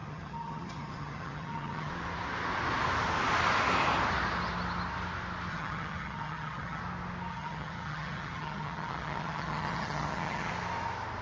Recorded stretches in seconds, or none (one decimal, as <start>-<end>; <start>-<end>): 1.9-5.5; 6.8-7.3; 10.5-11.2

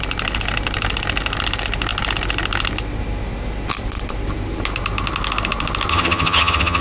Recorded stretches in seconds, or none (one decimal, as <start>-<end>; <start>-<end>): 0.0-5.9

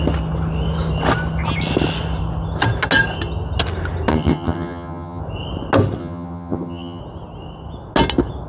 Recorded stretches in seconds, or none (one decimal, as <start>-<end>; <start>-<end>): 0.0-4.1; 5.2-6.0; 7.0-8.5

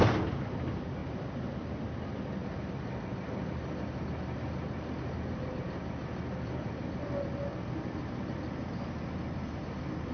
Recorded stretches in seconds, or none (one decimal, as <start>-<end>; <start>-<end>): 0.0-10.1